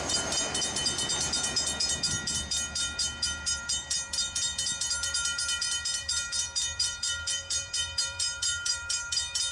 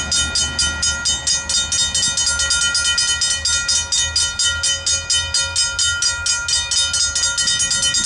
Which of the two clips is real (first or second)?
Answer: second